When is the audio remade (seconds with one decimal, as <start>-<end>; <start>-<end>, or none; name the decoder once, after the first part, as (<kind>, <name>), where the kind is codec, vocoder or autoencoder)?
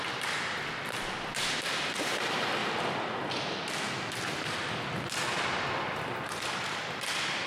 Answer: none